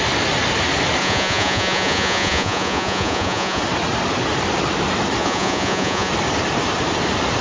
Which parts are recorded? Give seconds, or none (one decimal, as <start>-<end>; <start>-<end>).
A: 0.0-1.0; 3.6-5.2; 6.1-7.4

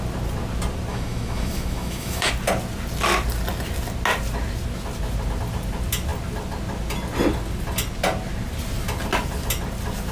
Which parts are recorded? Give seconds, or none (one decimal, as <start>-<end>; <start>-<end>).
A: 0.0-0.9; 2.3-10.1

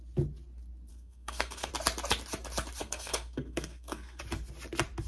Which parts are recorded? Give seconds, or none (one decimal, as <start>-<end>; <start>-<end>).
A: 0.0-0.9; 1.7-2.8; 4.2-5.1